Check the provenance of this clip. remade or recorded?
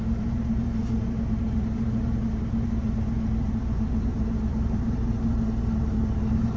remade